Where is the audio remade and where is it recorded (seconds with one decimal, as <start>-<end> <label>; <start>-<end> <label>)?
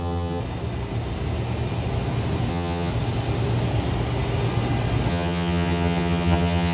0.0-0.4 remade; 0.4-2.5 recorded; 2.5-2.9 remade; 2.9-5.1 recorded; 5.1-6.7 remade